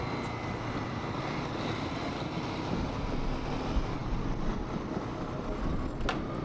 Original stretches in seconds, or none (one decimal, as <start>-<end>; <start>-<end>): 0.0-6.4